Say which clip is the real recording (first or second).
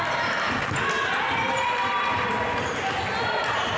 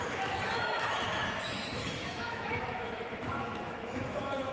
first